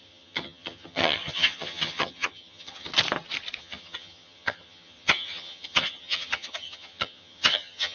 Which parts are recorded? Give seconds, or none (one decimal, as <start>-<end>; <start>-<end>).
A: 2.9-3.6